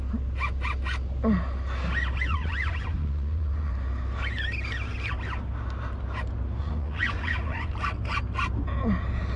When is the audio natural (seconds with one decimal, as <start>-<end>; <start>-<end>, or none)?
0.0-2.3; 3.7-6.6; 7.7-9.4